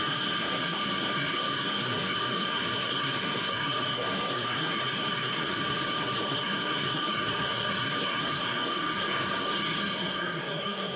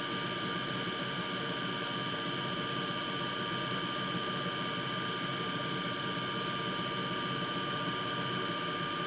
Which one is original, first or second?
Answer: second